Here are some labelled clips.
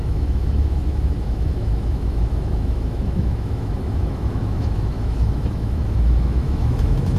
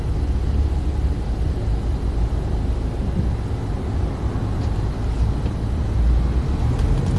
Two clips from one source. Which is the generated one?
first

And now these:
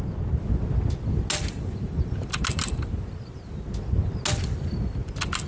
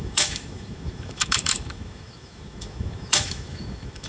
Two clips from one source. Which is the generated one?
second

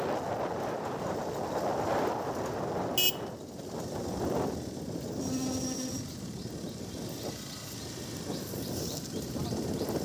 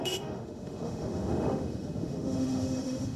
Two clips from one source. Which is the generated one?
second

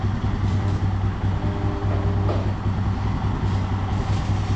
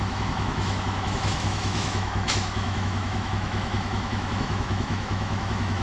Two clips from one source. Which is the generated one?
second